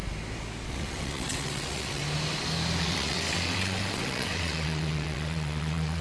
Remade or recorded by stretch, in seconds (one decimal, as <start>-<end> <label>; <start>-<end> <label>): 0.0-0.7 recorded; 0.7-2.0 remade; 2.0-2.8 recorded; 2.8-6.0 remade